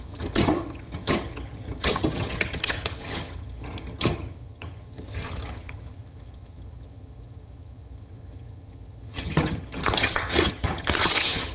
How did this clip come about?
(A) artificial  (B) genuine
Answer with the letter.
A